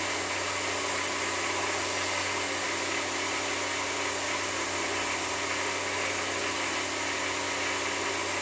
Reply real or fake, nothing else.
real